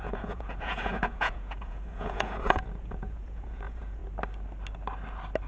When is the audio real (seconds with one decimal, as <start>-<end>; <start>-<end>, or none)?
4.0-5.5